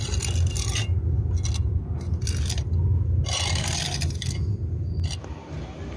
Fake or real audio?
real